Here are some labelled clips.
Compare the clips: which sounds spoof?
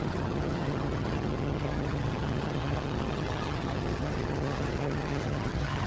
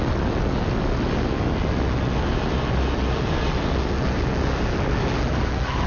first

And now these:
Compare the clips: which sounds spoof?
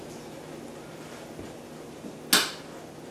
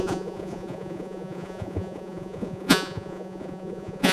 second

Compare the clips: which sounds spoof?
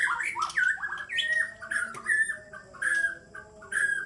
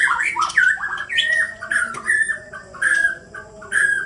second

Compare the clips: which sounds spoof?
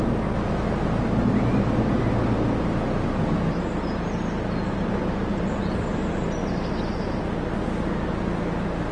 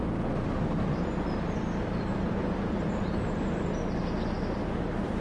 second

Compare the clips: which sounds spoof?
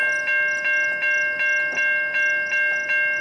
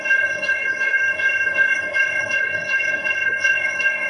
second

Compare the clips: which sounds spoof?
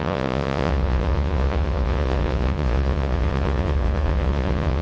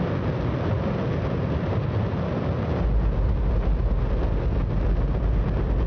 first